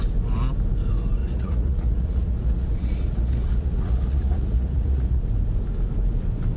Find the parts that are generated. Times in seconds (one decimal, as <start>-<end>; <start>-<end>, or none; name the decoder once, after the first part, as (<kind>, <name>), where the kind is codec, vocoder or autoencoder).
1.2-5.2 (vocoder, Vocos)